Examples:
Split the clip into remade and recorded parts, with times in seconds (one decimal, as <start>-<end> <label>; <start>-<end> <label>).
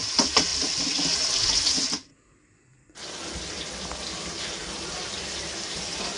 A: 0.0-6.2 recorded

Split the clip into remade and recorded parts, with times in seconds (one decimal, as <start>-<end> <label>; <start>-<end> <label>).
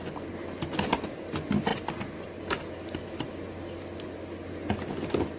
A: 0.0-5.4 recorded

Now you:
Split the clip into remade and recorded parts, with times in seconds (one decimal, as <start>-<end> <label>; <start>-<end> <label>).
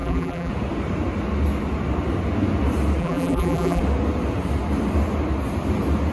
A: 0.0-0.5 remade; 0.5-3.0 recorded; 3.0-3.8 remade; 3.8-6.1 recorded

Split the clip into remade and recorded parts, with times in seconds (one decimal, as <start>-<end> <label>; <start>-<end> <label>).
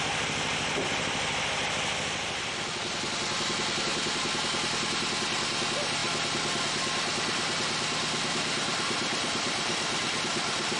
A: 0.0-6.0 recorded; 6.0-10.2 remade; 10.2-10.8 recorded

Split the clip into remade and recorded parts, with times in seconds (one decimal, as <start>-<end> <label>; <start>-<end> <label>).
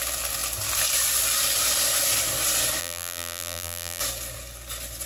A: 0.0-2.8 recorded; 2.8-4.0 remade; 4.0-5.1 recorded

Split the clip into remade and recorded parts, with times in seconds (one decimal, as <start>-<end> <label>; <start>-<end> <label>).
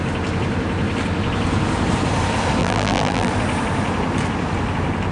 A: 0.0-2.6 recorded; 2.6-3.3 remade; 3.3-5.1 recorded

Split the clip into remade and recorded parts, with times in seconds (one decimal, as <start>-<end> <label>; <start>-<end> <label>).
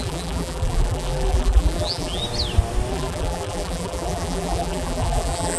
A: 0.0-2.2 remade; 2.2-2.9 recorded; 2.9-5.6 remade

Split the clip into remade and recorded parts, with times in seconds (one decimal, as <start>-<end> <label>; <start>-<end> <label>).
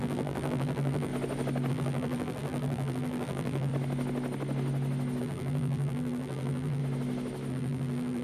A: 0.0-1.1 remade; 1.1-1.7 recorded; 1.7-3.7 remade; 3.7-5.2 recorded; 5.2-6.8 remade; 6.8-7.5 recorded; 7.5-8.2 remade